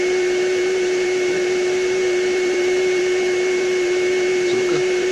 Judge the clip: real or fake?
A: fake